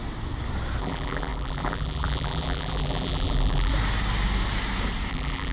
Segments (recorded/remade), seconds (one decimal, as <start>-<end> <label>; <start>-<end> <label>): 0.0-0.8 recorded; 0.8-3.7 remade; 3.7-5.1 recorded; 5.1-5.5 remade